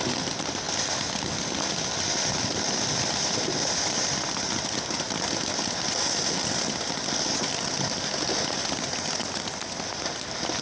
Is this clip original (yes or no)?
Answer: yes